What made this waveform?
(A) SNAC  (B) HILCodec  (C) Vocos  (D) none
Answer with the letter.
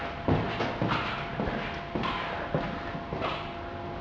D